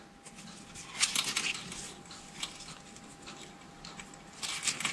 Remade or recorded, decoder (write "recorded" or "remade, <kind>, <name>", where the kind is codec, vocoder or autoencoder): recorded